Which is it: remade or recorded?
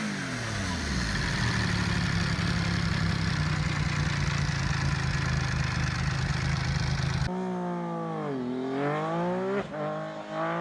recorded